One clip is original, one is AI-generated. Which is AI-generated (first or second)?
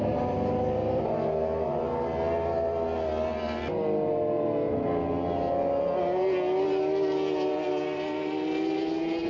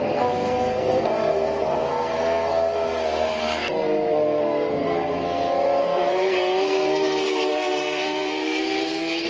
second